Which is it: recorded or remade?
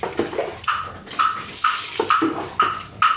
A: recorded